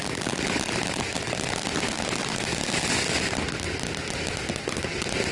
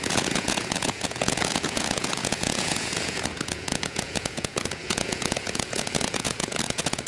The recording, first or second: first